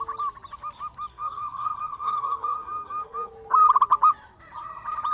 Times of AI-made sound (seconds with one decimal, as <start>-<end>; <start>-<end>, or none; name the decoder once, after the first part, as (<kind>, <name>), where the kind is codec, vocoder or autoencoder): 1.1-3.3 (codec, SNAC)